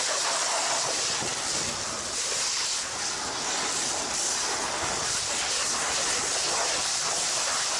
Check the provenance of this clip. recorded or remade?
recorded